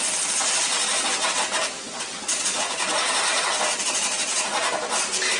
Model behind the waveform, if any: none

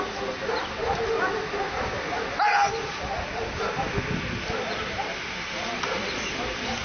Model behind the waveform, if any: none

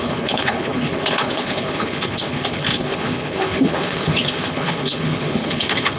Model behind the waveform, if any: codec, HILCodec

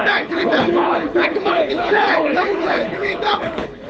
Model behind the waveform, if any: codec, HILCodec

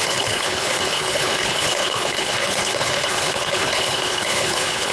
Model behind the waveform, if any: codec, HILCodec